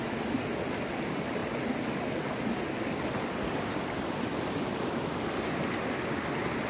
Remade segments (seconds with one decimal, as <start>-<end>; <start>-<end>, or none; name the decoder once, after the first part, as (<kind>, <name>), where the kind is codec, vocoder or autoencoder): none